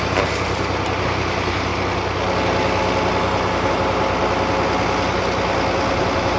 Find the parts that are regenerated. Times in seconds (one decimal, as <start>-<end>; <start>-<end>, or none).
0.0-1.7; 3.7-4.2; 6.0-6.4

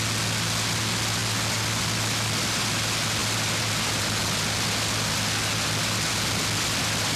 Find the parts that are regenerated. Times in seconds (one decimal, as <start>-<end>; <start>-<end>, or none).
none